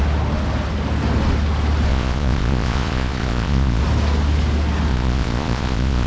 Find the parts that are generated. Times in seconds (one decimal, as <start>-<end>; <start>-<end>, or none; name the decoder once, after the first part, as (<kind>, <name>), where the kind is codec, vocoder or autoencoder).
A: 1.9-3.8 (vocoder, Vocos); 4.9-6.1